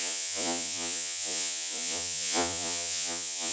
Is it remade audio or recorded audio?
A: remade